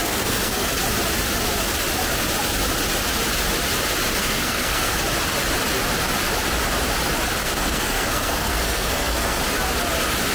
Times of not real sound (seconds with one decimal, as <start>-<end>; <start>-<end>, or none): 0.0-0.8; 4.2-5.0; 7.4-9.4